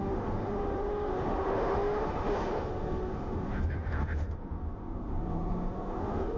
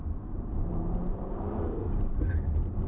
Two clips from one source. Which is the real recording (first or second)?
second